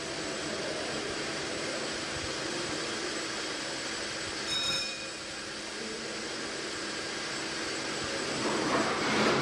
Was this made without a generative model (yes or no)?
yes